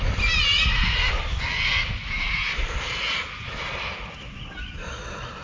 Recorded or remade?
recorded